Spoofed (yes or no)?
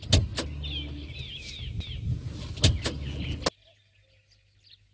no